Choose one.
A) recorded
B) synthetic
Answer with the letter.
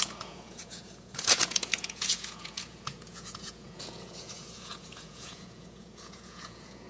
B